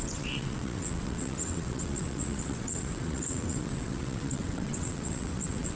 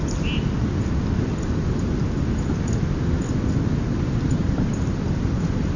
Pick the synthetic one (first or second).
first